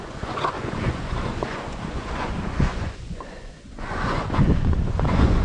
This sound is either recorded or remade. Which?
remade